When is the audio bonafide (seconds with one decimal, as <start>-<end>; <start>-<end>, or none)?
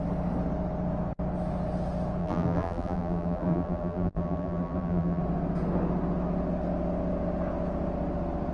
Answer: 0.0-2.2; 5.2-8.5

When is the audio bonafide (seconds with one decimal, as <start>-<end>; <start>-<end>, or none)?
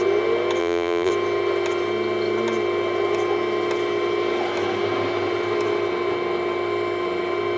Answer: 0.0-0.6; 1.1-7.6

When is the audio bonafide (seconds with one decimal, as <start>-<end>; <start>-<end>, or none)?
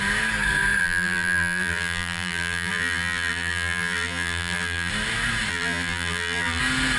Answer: 0.0-0.8; 4.9-5.5; 6.6-7.0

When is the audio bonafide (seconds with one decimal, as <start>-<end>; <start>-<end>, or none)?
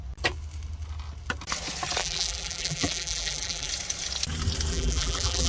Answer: 0.0-2.0; 3.7-4.7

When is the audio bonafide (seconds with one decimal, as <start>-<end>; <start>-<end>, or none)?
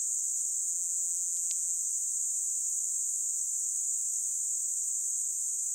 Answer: 0.0-0.6; 1.8-5.7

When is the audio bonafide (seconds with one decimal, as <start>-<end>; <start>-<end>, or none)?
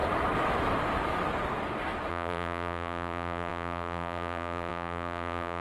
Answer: 0.0-2.1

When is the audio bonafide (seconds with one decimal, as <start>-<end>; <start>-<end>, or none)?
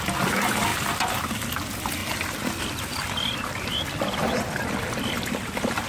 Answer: 0.0-2.0; 2.6-5.9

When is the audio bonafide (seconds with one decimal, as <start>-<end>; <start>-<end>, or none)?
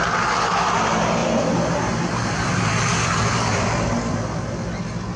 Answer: 0.0-1.2; 4.2-5.2